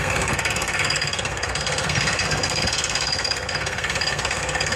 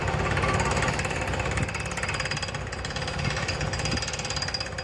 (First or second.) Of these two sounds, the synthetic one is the first